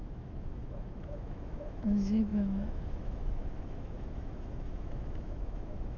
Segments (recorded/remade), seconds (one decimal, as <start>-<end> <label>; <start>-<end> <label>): 0.0-6.0 remade